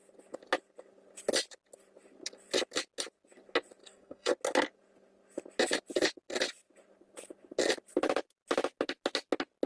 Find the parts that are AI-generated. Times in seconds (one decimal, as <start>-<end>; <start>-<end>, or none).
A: 3.8-4.3